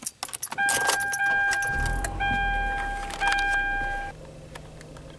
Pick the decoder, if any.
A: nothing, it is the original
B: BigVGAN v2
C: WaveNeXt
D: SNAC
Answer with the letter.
A